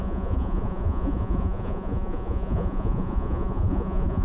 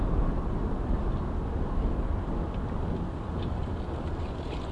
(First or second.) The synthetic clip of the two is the first